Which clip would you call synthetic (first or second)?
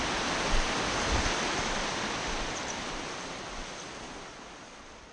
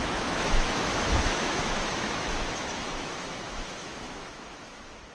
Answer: second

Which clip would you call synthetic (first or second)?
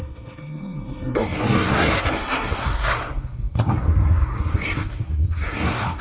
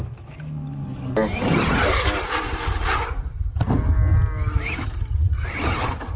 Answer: first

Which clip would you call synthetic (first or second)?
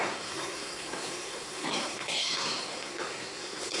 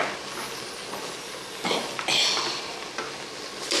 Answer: first